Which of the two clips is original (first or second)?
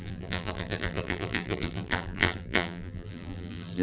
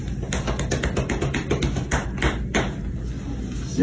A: second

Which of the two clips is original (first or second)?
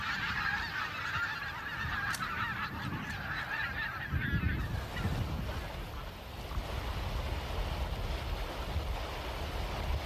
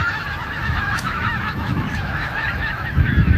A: first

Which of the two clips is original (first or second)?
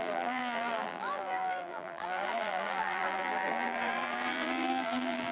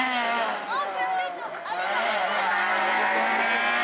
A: second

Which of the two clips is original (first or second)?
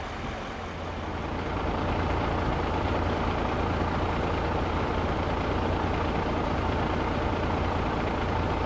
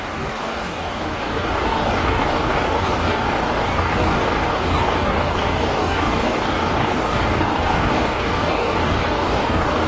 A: first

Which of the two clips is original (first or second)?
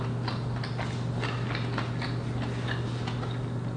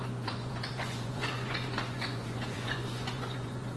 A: first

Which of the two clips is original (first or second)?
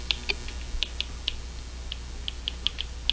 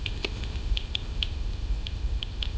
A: first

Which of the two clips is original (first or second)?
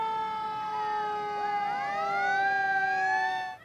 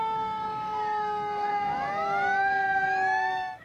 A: first